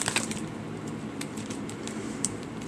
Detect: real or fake fake